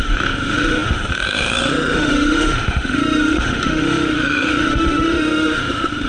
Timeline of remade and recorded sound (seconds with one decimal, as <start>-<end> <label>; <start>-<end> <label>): 0.0-6.1 remade